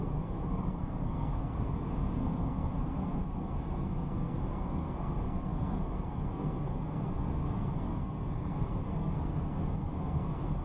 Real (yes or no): no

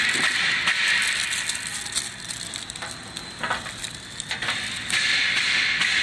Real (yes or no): yes